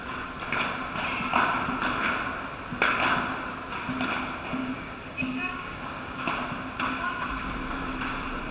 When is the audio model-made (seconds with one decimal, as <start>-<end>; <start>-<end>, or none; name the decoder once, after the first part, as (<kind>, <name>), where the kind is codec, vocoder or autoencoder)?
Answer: 4.6-6.3 (codec, DAC)